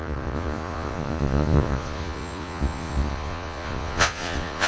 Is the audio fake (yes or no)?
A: yes